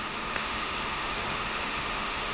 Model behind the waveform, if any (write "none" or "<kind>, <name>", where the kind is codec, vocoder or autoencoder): autoencoder, DAC-VAE